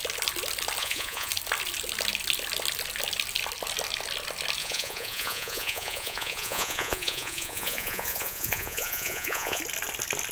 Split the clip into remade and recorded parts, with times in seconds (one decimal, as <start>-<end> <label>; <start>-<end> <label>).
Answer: 0.0-0.8 recorded; 0.8-1.3 remade; 1.3-4.6 recorded; 4.6-9.6 remade; 9.6-10.3 recorded